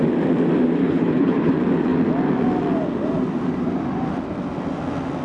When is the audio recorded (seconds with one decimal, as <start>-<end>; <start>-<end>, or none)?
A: 0.0-0.8; 1.5-5.2